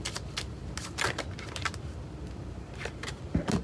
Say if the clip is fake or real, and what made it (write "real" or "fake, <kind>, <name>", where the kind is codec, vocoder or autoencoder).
real